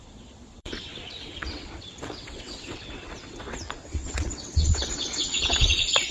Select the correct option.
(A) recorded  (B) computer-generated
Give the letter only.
B